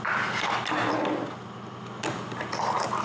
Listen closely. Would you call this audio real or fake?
real